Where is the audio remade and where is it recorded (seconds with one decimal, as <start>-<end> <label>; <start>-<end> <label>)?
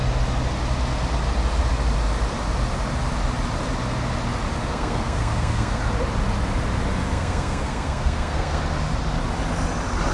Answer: 0.0-4.7 recorded; 4.7-5.8 remade; 5.8-7.1 recorded; 7.1-8.6 remade; 8.6-10.1 recorded